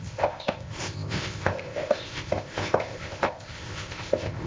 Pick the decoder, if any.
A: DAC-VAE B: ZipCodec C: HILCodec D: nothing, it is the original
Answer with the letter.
B